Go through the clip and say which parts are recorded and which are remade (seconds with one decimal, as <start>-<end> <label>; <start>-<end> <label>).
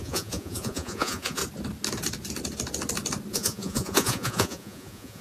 0.0-1.4 remade; 1.4-3.3 recorded; 3.3-5.2 remade